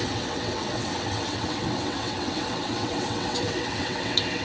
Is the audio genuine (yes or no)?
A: no